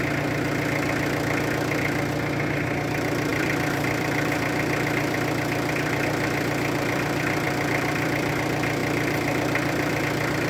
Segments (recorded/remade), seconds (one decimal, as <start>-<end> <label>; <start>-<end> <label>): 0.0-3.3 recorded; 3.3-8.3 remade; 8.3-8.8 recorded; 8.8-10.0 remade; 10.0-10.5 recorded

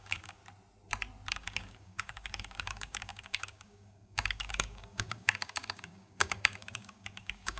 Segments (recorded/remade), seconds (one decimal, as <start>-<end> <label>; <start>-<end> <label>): 0.0-0.4 remade; 0.4-1.3 recorded; 1.3-7.6 remade

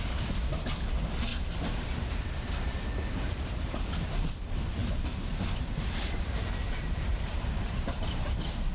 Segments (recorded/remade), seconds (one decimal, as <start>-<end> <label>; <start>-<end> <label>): 0.0-1.3 recorded; 1.3-4.3 remade; 4.3-4.8 recorded; 4.8-8.7 remade

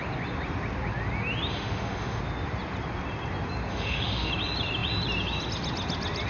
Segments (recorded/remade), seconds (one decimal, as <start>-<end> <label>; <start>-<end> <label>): 0.0-1.5 recorded; 1.5-2.2 remade; 2.2-3.7 recorded; 3.7-4.3 remade; 4.3-6.3 recorded

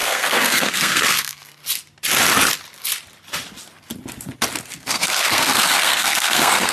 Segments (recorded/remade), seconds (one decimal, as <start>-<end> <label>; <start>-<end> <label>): 0.0-1.6 remade; 1.6-4.7 recorded; 4.7-6.7 remade